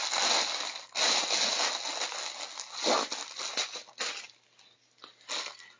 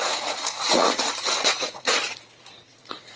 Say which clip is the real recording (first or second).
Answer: first